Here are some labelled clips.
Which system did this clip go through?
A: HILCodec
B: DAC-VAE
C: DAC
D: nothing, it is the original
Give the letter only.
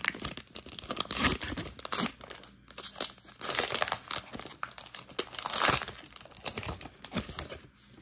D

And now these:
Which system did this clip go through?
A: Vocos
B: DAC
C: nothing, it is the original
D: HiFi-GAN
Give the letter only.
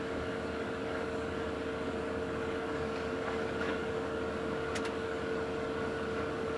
B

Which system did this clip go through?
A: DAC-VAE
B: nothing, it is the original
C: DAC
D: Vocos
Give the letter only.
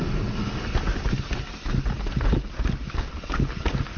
B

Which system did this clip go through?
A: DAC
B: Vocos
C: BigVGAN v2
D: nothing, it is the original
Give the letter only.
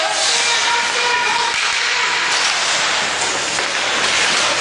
D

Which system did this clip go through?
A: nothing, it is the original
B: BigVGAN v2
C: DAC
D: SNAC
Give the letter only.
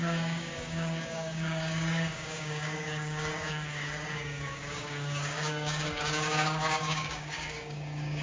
C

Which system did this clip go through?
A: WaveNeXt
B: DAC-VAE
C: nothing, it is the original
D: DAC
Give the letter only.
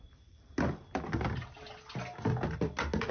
C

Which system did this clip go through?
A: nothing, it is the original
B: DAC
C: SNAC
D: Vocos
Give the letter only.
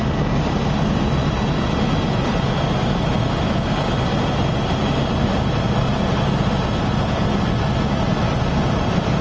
A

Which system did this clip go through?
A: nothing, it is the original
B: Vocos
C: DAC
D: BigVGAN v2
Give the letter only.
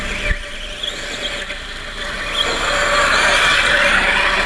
A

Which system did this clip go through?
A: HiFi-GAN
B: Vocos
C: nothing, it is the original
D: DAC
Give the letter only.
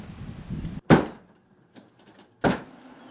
C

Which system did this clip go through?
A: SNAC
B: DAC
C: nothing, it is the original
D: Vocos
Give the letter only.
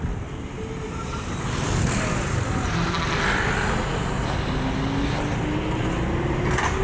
C